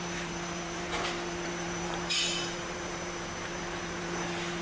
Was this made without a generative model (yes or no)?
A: no